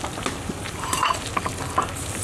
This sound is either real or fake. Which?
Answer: real